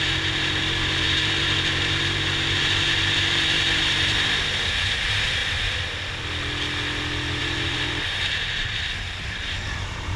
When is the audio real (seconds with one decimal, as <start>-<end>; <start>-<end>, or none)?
5.4-7.4